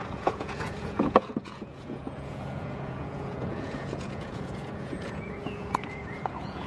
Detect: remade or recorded remade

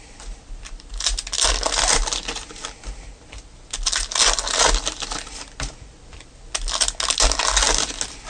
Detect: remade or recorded recorded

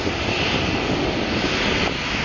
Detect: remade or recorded recorded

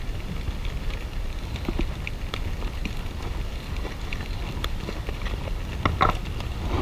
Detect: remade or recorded recorded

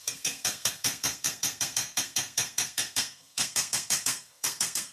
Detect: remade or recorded remade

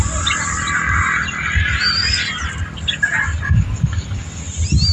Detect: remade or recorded recorded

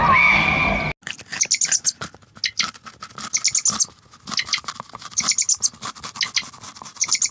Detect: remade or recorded recorded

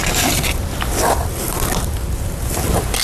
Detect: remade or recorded recorded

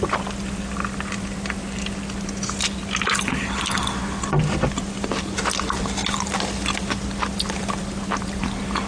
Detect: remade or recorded recorded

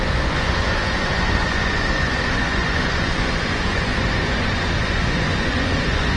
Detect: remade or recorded remade